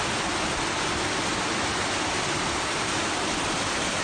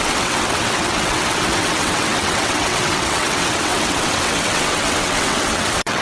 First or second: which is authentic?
first